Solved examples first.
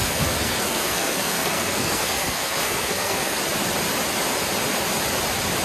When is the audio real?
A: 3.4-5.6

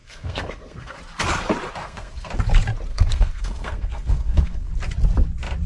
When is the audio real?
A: 1.0-1.8; 2.3-2.9; 4.7-5.7

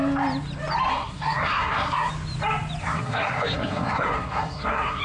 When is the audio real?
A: 0.0-0.9; 2.1-2.8

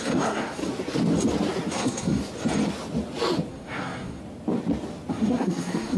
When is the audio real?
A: 0.6-1.7; 2.2-3.5; 4.2-5.1

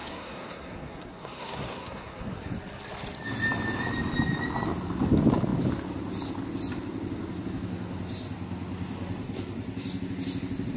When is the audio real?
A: 2.5-10.8

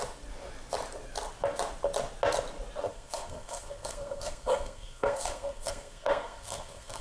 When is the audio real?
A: 0.0-2.9